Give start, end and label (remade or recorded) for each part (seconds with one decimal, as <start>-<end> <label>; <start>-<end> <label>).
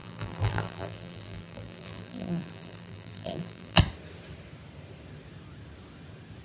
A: 0.0-3.8 remade; 3.8-6.4 recorded